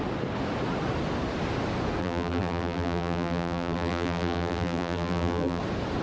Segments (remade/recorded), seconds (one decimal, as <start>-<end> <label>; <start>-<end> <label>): 0.0-2.0 recorded; 2.0-5.6 remade; 5.6-6.0 recorded